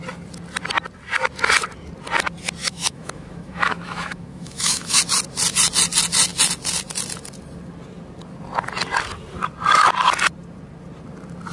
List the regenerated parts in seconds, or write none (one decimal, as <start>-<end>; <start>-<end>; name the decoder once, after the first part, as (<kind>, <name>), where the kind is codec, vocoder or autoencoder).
2.6-5.0 (autoencoder, DAC-VAE)